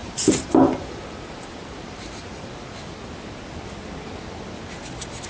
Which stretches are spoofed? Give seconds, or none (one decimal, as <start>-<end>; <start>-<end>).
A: 0.0-2.5